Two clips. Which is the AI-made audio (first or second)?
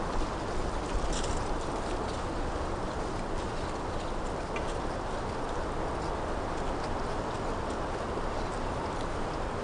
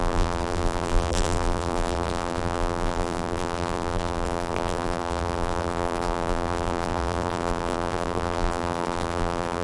second